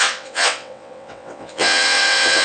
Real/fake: fake